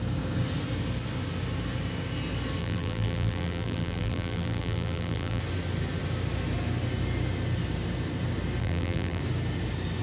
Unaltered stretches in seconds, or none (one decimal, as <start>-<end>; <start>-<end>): 0.0-2.6; 5.4-8.6; 9.2-10.0